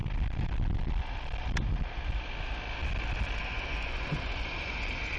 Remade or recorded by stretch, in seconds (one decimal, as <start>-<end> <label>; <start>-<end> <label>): 0.0-3.4 recorded; 3.4-5.2 remade